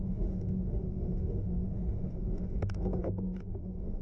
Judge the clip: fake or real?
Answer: fake